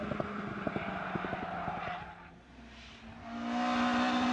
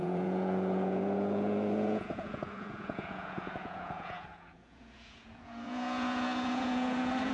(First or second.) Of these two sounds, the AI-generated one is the second